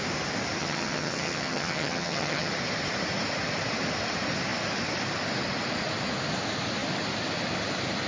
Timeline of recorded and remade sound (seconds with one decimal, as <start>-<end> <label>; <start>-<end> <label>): 0.0-0.6 recorded; 0.6-2.5 remade; 2.5-8.1 recorded